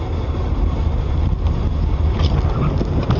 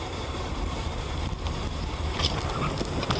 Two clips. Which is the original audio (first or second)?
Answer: first